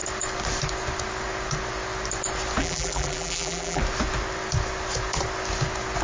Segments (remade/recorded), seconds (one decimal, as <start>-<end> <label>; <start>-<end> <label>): 0.0-2.6 recorded; 2.6-3.8 remade; 3.8-6.0 recorded